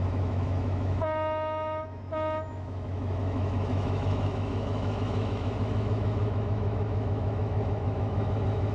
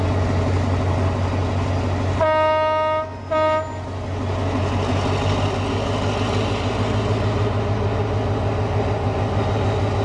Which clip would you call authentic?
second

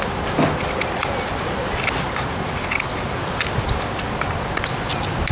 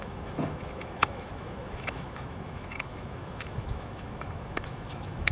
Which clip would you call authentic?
first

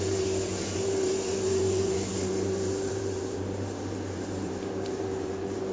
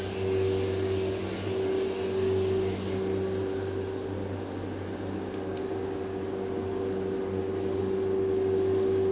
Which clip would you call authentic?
second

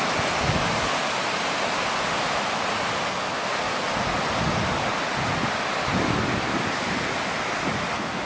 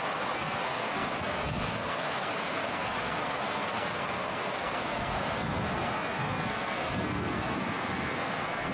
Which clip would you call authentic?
first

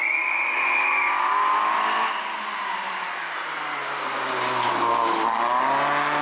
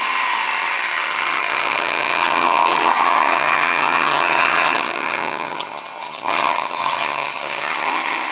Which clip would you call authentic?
first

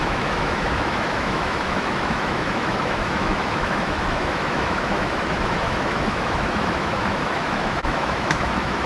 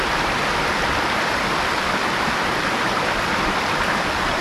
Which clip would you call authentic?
second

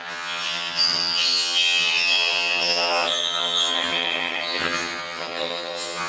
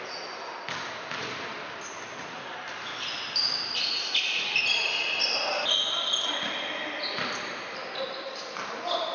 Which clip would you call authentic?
second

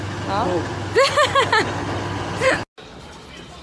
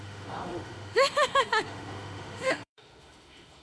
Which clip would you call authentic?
first